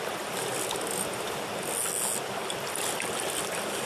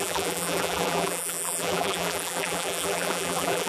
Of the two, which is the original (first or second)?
first